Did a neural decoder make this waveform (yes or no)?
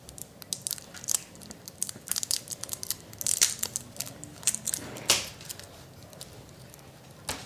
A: no